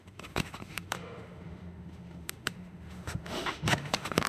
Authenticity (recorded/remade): remade